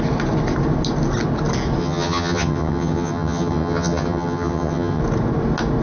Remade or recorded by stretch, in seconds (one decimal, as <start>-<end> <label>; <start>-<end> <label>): 0.0-1.8 recorded; 1.8-5.0 remade; 5.0-5.8 recorded